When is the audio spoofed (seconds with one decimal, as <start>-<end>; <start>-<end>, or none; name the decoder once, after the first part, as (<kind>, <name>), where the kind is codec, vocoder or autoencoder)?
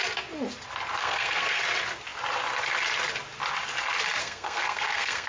1.0-1.6 (codec, SNAC); 4.2-5.3